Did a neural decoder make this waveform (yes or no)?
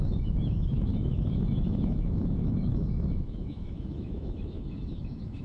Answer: yes